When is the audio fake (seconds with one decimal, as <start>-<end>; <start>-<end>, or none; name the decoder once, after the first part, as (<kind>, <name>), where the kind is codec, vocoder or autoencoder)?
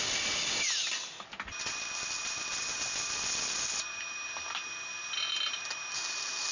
none